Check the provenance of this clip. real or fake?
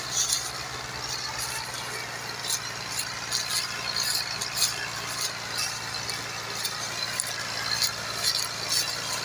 real